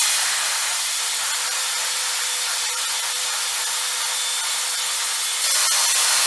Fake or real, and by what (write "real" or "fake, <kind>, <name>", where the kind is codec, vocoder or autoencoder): real